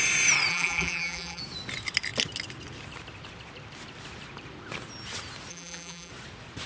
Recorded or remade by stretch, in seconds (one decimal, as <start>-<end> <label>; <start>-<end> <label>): 0.0-0.5 recorded; 0.5-1.4 remade; 1.4-5.5 recorded; 5.5-6.1 remade; 6.1-6.7 recorded